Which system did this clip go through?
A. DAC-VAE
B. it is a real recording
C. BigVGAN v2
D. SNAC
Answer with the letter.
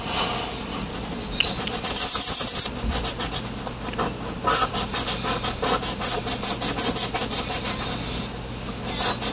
B